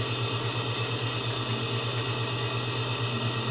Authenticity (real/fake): real